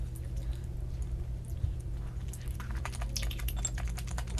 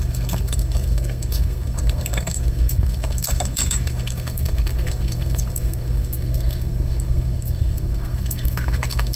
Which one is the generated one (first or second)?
second